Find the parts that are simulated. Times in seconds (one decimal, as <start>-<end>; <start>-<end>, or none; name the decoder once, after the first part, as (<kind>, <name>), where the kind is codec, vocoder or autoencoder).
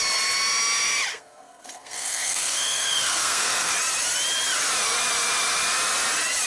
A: 1.1-3.7 (codec, SNAC)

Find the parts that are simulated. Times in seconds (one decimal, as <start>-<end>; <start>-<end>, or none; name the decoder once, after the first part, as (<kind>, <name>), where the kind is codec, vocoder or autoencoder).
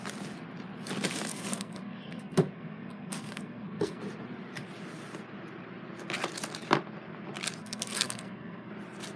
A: 1.3-4.0 (codec, SNAC); 7.6-8.7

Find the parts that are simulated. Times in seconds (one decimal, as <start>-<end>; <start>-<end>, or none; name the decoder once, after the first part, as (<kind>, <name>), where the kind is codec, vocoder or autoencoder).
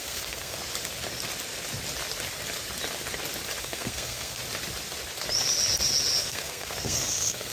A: 0.0-0.6 (codec, SNAC); 3.6-4.4; 6.2-7.5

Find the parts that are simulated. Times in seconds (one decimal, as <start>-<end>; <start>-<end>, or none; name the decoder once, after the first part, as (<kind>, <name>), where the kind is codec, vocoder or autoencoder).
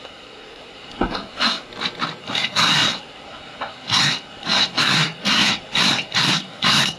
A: 0.0-1.7 (codec, SNAC); 2.2-7.0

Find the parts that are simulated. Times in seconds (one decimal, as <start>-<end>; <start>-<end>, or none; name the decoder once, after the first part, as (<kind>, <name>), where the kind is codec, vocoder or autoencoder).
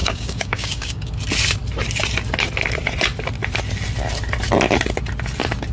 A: 0.0-1.1 (codec, DAC)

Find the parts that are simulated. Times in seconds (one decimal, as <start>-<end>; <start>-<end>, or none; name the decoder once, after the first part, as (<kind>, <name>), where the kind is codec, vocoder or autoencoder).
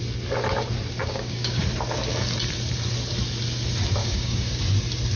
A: 1.0-1.6 (codec, DAC); 4.0-4.6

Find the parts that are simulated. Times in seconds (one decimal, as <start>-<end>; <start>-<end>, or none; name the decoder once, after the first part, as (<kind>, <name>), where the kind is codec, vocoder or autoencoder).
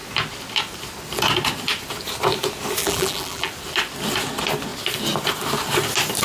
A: 2.8-3.5 (vocoder, BigVGAN v2)